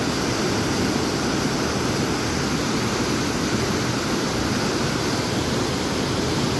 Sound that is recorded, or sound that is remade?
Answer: recorded